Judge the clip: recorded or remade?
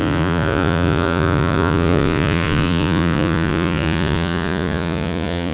remade